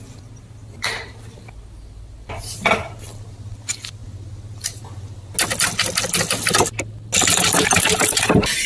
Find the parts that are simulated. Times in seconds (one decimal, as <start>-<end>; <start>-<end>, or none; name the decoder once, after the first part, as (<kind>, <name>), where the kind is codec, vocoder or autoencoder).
none